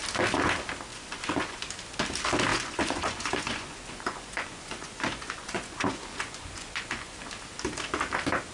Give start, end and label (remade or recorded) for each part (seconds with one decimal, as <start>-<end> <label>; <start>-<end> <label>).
0.0-0.9 recorded; 0.9-1.6 remade; 1.6-2.5 recorded; 2.5-7.3 remade; 7.3-8.5 recorded